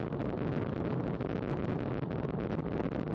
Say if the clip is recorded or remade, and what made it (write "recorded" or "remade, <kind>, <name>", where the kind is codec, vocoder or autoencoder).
recorded